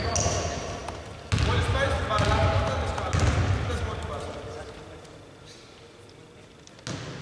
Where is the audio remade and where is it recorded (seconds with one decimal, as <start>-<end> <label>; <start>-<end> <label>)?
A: 0.0-7.2 recorded